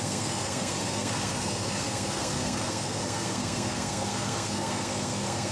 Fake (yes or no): yes